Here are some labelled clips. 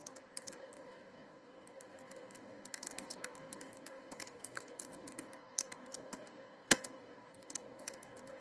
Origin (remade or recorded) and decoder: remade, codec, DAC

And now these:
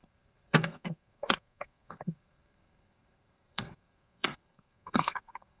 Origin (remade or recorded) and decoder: remade, codec, SNAC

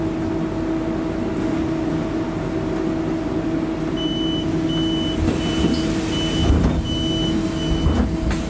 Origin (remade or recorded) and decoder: recorded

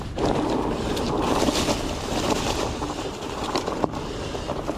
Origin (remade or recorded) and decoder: recorded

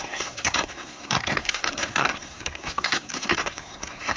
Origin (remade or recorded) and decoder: remade, codec, SNAC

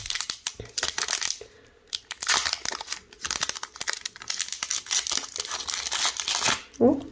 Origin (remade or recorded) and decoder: recorded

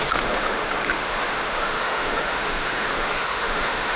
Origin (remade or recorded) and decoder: remade, autoencoder, DAC-VAE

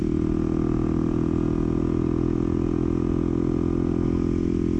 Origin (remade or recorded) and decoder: recorded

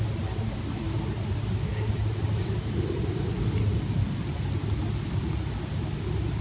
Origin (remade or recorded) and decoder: recorded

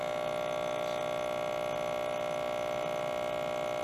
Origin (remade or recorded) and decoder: recorded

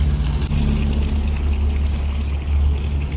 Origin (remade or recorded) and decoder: recorded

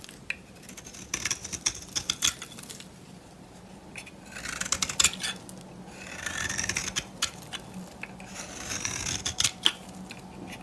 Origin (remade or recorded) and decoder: recorded